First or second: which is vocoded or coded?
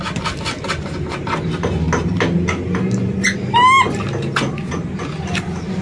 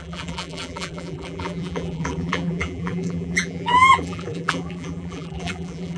second